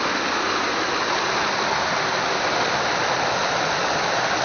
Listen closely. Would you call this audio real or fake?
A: real